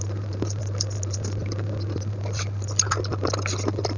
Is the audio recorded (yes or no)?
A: yes